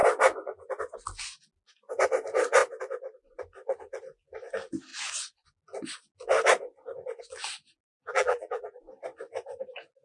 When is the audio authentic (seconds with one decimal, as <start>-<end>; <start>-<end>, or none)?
0.0-8.0; 8.8-10.0